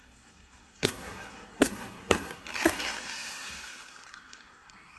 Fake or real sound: fake